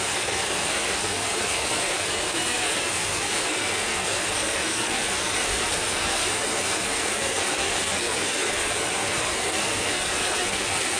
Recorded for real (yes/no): no